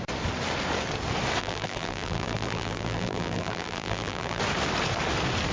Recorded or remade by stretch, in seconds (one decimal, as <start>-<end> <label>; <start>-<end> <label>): 0.0-1.4 recorded; 1.4-4.4 remade; 4.4-5.5 recorded